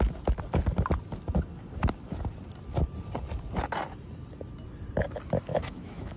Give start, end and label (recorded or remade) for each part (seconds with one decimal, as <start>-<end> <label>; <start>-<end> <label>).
0.0-5.5 recorded; 5.5-6.2 remade